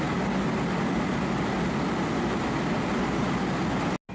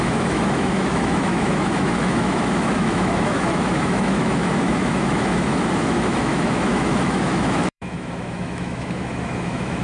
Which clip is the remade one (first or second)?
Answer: second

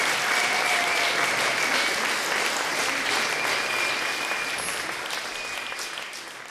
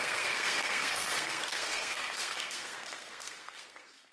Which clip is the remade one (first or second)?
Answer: second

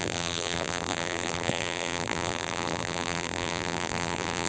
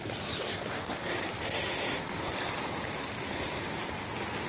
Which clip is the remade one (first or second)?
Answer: first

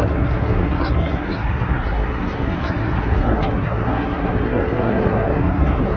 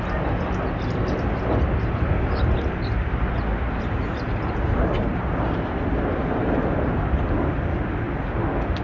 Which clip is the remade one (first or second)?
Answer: first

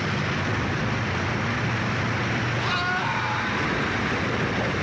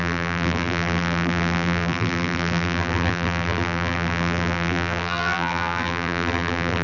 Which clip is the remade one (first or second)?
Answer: second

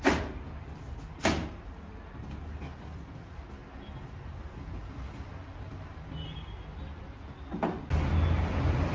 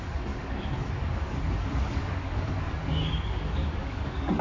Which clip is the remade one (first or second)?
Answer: second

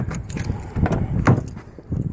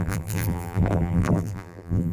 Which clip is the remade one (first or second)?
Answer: second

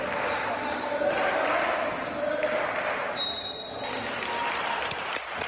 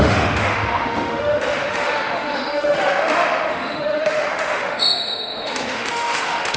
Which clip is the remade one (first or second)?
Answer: second